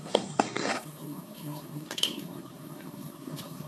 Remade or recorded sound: remade